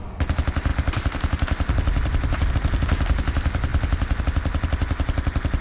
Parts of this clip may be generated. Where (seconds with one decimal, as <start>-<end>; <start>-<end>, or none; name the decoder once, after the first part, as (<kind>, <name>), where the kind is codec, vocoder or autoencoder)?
0.7-2.5 (vocoder, BigVGAN v2); 3.7-4.2